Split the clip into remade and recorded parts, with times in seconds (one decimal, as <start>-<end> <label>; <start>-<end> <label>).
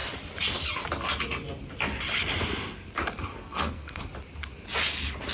0.0-3.3 recorded; 3.3-4.0 remade; 4.0-5.3 recorded